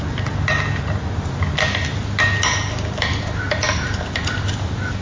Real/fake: real